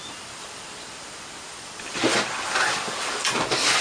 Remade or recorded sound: recorded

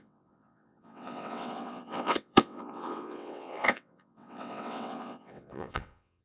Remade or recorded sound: remade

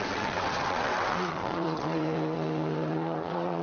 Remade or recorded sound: remade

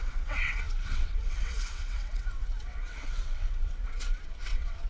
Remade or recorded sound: remade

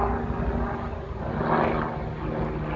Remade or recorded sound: recorded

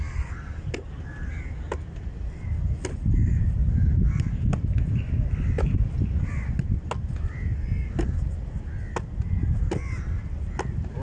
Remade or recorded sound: recorded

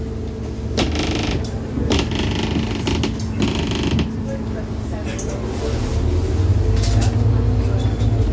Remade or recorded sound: recorded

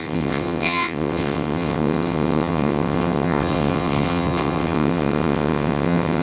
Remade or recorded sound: remade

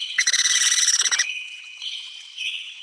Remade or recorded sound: remade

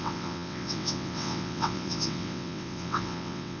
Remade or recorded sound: remade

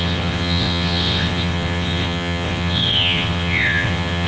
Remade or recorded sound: remade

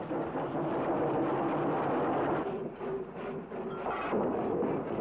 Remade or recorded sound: recorded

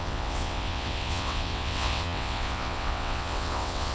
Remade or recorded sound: remade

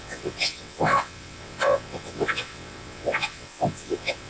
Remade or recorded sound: remade